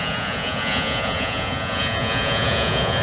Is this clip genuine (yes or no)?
no